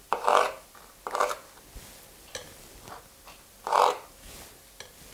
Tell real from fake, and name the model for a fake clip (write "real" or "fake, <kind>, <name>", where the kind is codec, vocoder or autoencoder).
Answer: real